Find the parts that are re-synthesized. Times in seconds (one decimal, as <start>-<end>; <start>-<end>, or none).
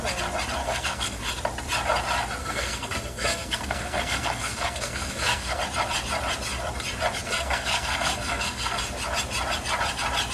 0.6-1.2; 2.4-5.6; 7.2-8.8